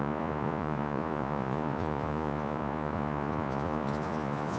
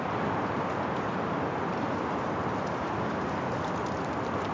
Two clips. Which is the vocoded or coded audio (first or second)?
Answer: first